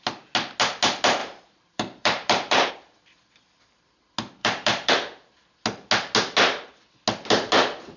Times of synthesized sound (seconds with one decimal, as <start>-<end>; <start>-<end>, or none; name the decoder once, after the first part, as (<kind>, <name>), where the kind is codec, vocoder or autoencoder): 1.2-2.7 (vocoder, BigVGAN v2); 4.4-4.9